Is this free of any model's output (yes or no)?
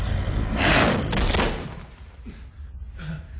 yes